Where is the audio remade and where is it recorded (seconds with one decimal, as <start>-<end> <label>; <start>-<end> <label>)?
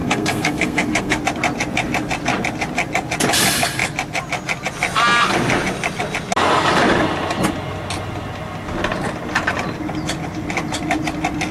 0.0-1.2 remade; 1.2-11.5 recorded